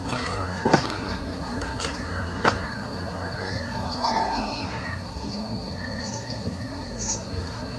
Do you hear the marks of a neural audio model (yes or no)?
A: yes